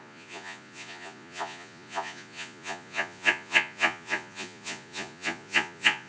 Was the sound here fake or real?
fake